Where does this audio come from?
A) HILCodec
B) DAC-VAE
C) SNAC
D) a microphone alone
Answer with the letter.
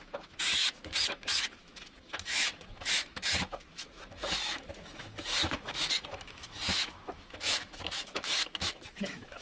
B